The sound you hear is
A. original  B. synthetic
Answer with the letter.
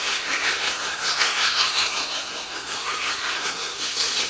B